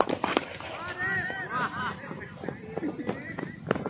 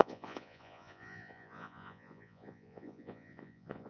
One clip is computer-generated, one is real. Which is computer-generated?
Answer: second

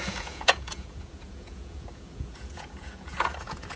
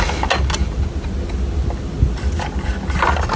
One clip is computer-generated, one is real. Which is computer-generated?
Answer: first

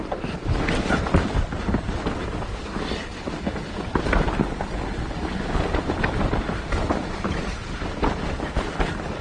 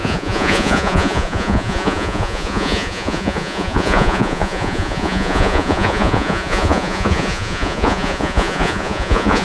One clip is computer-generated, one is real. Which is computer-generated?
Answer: second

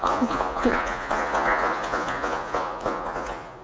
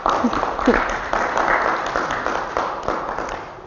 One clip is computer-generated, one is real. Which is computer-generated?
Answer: first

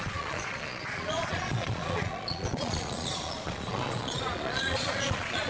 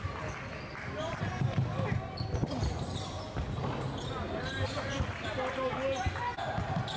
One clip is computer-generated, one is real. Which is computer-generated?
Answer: first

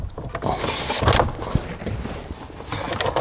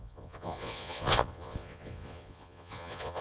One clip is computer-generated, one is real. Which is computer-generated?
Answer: second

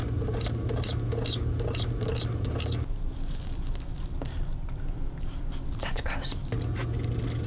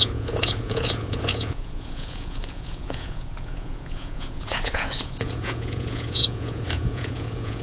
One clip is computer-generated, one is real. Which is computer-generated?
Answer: second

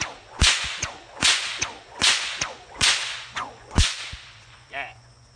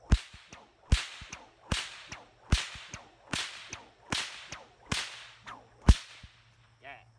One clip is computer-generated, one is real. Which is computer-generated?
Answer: first